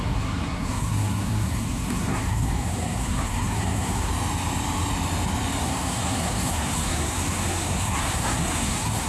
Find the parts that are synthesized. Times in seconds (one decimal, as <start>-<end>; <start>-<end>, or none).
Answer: 0.0-4.1; 5.6-9.1